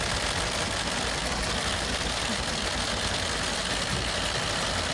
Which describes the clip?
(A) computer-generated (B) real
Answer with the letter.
B